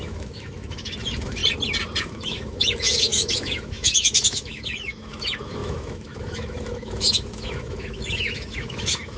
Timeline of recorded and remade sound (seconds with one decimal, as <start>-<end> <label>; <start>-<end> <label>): 0.0-1.4 remade; 1.4-2.0 recorded; 2.0-9.2 remade